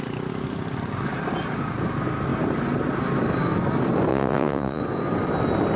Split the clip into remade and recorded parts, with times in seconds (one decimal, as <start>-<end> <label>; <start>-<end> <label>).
0.0-4.1 recorded; 4.1-4.8 remade; 4.8-5.8 recorded